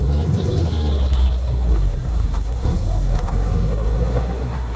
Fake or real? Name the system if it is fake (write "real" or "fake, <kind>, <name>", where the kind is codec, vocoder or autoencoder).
fake, codec, SNAC